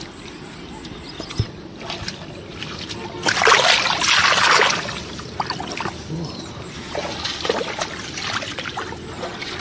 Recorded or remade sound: recorded